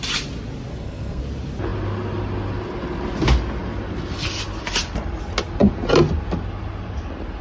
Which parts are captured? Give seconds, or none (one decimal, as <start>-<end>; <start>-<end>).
0.0-0.7; 1.2-7.4